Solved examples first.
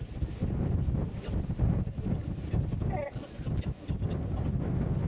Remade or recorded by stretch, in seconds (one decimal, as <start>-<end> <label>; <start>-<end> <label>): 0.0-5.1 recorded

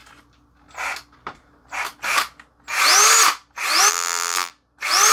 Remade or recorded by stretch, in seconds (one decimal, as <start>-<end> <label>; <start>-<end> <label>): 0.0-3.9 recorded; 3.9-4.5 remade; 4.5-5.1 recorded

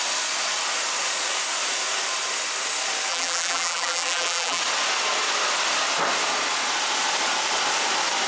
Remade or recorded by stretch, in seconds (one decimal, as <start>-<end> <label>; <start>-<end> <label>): 0.0-3.1 recorded; 3.1-4.6 remade; 4.6-8.3 recorded

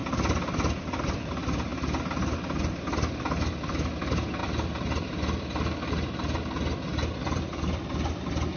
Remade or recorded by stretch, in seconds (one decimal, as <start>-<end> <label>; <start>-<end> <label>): 0.0-1.7 remade; 1.7-2.6 recorded; 2.6-4.4 remade; 4.4-7.2 recorded; 7.2-8.6 remade

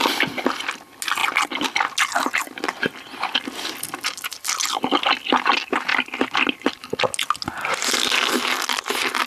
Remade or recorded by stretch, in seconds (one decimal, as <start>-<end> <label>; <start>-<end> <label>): 0.0-9.3 recorded

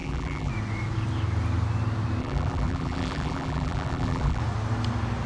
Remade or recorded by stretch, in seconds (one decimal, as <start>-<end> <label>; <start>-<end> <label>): 0.0-0.5 remade; 0.5-2.2 recorded; 2.2-4.4 remade; 4.4-5.3 recorded

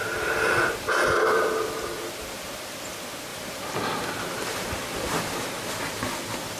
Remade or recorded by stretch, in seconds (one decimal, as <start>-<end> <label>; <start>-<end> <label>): 0.0-3.3 recorded; 3.3-5.7 remade; 5.7-6.6 recorded